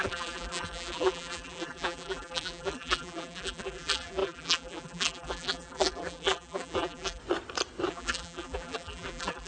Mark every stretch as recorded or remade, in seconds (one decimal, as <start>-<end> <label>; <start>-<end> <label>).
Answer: 0.0-7.2 remade; 7.2-7.9 recorded; 7.9-9.5 remade